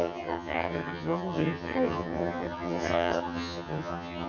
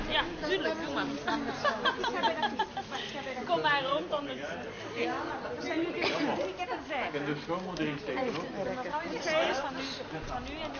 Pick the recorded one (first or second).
second